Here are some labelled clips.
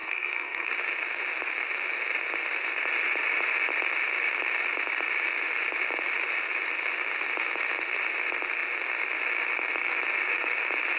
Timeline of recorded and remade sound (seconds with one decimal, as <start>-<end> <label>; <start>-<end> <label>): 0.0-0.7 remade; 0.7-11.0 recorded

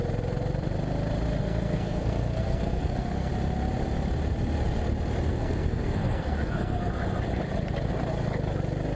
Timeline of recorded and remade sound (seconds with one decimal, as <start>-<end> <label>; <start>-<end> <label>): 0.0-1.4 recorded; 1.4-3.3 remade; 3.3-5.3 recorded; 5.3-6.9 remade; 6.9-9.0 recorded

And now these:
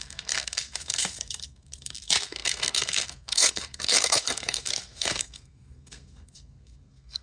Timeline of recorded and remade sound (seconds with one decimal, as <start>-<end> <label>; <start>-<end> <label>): 0.0-7.2 remade

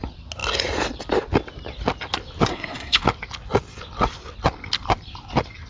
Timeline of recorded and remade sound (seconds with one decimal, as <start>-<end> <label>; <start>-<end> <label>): 0.0-2.5 recorded; 2.5-3.0 remade; 3.0-5.7 recorded

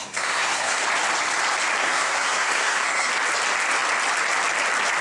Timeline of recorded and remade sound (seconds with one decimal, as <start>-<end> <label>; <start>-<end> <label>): 0.0-0.8 remade; 0.8-1.8 recorded; 1.8-3.1 remade; 3.1-5.0 recorded